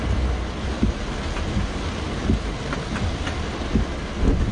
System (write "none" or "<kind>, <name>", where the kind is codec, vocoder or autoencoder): none